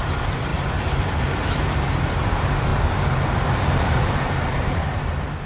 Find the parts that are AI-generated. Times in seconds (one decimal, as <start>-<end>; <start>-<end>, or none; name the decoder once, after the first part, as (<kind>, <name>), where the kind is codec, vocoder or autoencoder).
0.0-5.5 (vocoder, BigVGAN v2)